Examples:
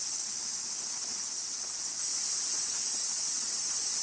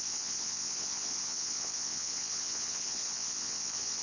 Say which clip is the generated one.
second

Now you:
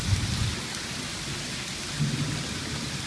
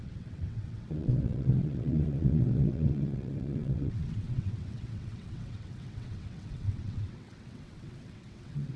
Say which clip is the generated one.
second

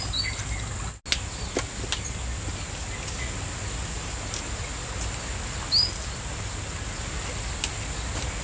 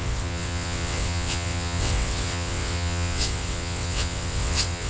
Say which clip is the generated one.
second